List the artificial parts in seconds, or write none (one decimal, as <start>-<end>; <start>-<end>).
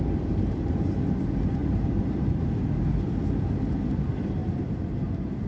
1.6-2.6; 4.4-5.0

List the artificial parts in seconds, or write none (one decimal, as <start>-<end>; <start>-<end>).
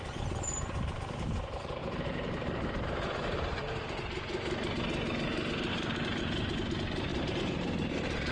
1.8-3.7; 5.7-6.2; 7.1-7.7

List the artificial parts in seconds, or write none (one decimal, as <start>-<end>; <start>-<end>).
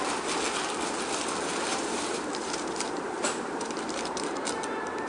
1.7-5.1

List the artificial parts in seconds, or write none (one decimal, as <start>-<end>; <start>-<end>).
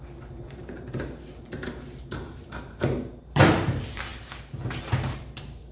0.0-5.7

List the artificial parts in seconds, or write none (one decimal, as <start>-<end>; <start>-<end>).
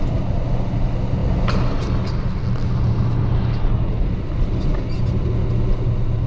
none